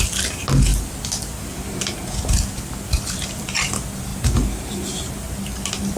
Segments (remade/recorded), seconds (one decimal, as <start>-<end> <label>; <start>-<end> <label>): 0.0-4.1 recorded; 4.1-5.1 remade; 5.1-6.0 recorded

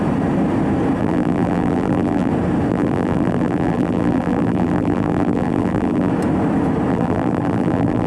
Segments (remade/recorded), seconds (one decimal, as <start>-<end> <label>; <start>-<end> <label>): 0.0-1.0 recorded; 1.0-2.3 remade; 2.3-2.7 recorded; 2.7-6.1 remade; 6.1-6.9 recorded; 6.9-8.1 remade